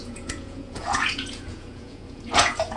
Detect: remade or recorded remade